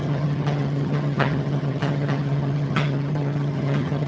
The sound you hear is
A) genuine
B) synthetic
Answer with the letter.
B